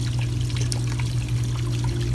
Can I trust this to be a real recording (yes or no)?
yes